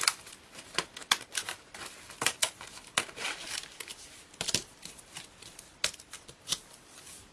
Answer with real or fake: fake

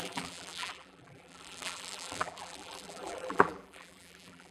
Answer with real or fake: fake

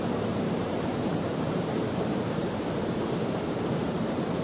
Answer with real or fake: fake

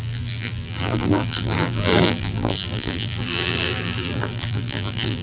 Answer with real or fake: fake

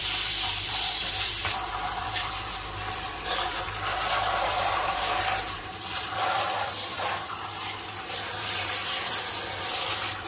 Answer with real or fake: fake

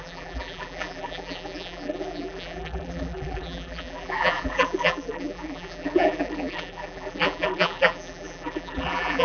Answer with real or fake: fake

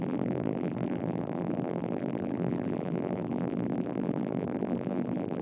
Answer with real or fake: fake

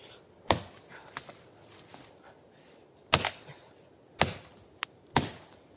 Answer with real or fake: real